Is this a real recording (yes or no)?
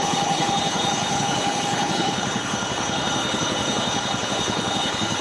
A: no